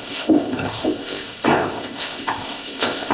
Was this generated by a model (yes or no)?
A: yes